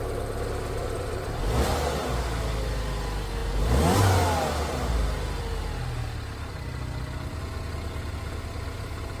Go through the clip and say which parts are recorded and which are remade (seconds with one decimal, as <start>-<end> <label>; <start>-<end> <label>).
0.0-0.8 recorded; 0.8-1.4 remade; 1.4-9.2 recorded

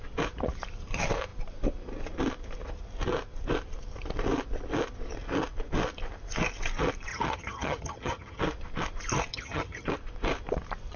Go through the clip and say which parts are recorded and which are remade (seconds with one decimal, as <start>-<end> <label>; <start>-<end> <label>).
0.0-7.1 recorded; 7.1-8.4 remade; 8.4-9.3 recorded; 9.3-9.9 remade; 9.9-11.0 recorded

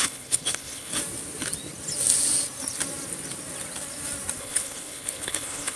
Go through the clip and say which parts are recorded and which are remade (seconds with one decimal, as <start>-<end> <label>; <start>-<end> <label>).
0.0-0.9 remade; 0.9-4.4 recorded; 4.4-5.8 remade

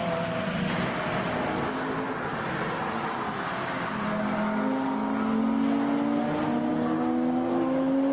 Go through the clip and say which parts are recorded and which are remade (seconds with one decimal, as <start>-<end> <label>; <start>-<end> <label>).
0.0-6.7 recorded; 6.7-7.5 remade; 7.5-8.1 recorded

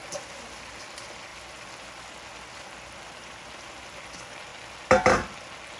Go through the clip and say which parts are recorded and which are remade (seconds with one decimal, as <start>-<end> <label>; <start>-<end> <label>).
0.0-5.8 recorded

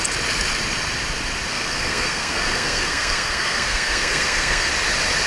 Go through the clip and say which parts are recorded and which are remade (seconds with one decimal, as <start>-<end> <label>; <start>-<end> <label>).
0.0-1.5 recorded; 1.5-4.7 remade; 4.7-5.3 recorded

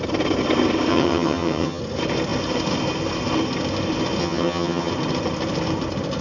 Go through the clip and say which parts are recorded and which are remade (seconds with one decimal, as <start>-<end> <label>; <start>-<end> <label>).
0.0-0.9 recorded; 0.9-1.8 remade; 1.8-4.2 recorded; 4.2-4.9 remade; 4.9-6.2 recorded

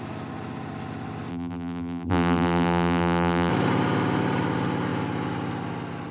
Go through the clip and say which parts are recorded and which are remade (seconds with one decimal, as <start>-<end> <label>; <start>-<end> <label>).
0.0-1.3 recorded; 1.3-3.5 remade; 3.5-6.1 recorded